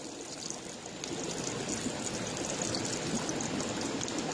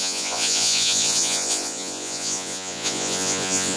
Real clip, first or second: first